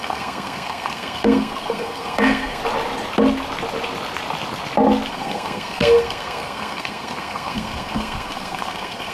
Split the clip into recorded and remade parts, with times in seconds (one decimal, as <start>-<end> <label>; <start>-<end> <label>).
0.0-2.6 remade; 2.6-5.1 recorded; 5.1-9.1 remade